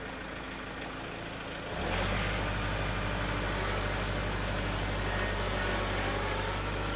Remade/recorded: recorded